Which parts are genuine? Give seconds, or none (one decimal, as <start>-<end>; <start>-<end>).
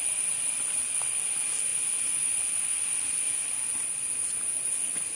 0.0-5.2